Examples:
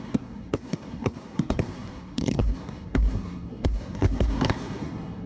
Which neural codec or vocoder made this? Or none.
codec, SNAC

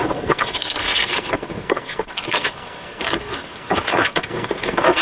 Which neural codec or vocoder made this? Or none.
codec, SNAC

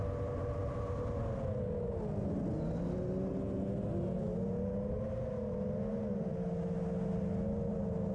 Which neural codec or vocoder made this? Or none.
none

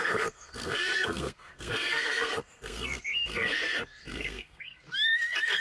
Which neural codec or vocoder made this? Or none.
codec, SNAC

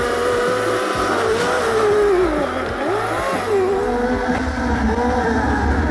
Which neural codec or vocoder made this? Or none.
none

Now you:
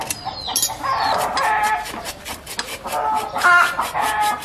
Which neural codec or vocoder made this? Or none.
none